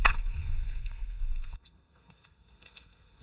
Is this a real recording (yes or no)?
no